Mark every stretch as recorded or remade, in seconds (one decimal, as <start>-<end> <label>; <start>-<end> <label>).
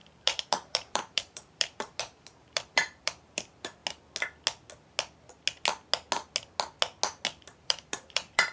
0.0-3.8 remade; 3.8-7.4 recorded; 7.4-8.5 remade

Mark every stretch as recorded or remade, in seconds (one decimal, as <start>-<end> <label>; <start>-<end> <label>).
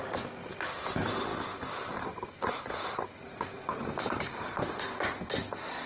0.0-1.3 recorded; 1.3-4.8 remade; 4.8-5.9 recorded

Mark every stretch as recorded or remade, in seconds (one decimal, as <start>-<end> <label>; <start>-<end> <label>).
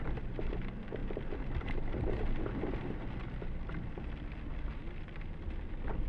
0.0-6.1 recorded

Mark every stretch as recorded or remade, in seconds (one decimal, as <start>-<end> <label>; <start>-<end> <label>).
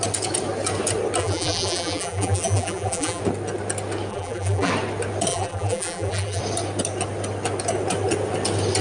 0.0-1.2 recorded; 1.2-3.2 remade; 3.2-4.1 recorded; 4.1-4.7 remade; 4.7-5.3 recorded; 5.3-6.4 remade; 6.4-8.8 recorded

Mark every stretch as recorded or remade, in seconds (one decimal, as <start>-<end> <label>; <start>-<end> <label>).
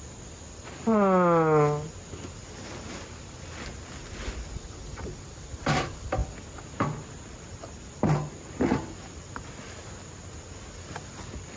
0.0-11.6 recorded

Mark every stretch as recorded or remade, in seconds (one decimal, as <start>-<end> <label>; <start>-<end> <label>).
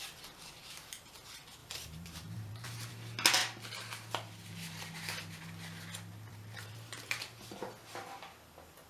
0.0-1.6 recorded; 1.6-2.9 remade; 2.9-6.3 recorded; 6.3-7.2 remade; 7.2-8.9 recorded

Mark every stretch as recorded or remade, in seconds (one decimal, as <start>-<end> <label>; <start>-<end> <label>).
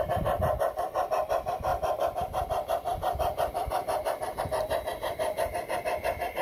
0.0-1.7 recorded; 1.7-4.4 remade; 4.4-6.4 recorded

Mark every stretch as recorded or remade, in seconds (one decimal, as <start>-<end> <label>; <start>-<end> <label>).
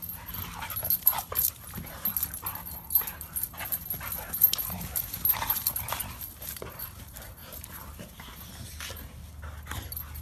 0.0-7.4 recorded; 7.4-8.5 remade; 8.5-10.2 recorded